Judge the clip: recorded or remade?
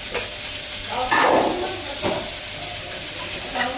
recorded